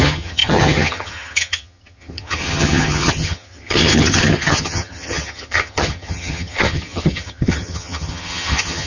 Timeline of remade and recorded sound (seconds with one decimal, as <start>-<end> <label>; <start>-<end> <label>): 0.0-8.9 remade

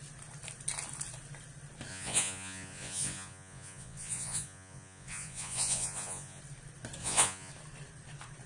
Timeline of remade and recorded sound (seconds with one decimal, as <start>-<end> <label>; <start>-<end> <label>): 0.0-1.9 recorded; 1.9-6.4 remade; 6.4-7.0 recorded; 7.0-7.5 remade; 7.5-8.5 recorded